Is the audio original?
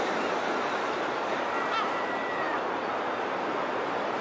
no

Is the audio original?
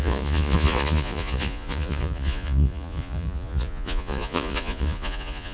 no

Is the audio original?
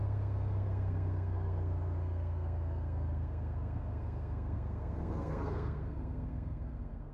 no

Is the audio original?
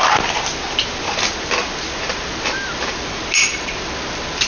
yes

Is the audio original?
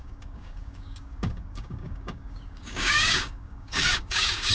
no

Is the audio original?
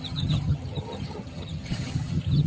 no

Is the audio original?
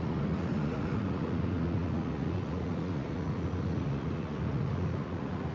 no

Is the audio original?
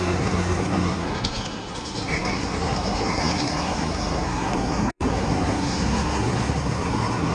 no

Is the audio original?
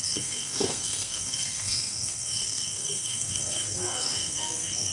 no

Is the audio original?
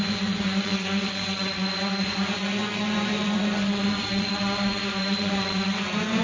no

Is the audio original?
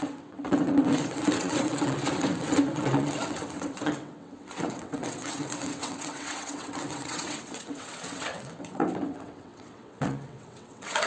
no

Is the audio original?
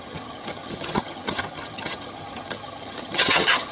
no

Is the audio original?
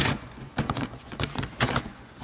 no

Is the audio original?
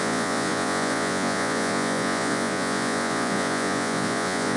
no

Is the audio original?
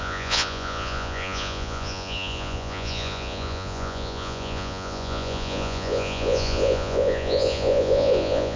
no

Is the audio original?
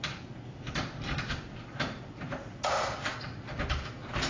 yes